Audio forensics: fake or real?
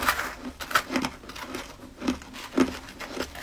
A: real